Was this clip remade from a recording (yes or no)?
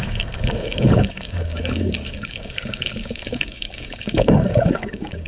yes